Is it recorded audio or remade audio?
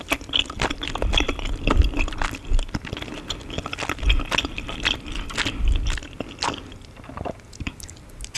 recorded